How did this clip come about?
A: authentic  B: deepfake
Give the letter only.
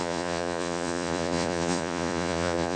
B